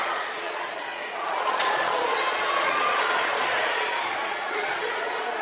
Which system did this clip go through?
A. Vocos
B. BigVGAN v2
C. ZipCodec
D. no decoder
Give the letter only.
A